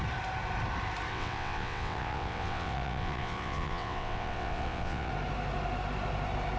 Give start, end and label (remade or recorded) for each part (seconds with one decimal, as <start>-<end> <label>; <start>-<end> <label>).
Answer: 0.0-1.1 recorded; 1.1-5.1 remade; 5.1-6.6 recorded